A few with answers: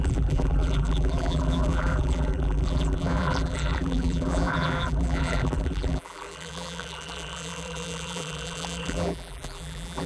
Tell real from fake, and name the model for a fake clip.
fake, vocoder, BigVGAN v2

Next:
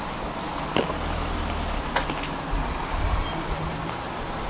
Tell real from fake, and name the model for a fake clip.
real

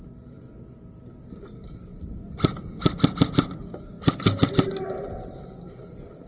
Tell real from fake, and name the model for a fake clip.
real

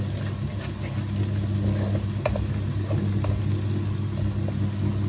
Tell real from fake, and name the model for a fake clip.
real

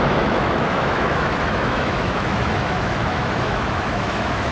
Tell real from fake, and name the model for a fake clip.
fake, autoencoder, DAC-VAE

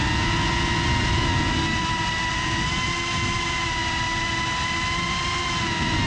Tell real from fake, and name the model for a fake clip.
real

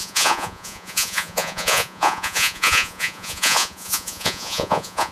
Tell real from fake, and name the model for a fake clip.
fake, vocoder, Vocos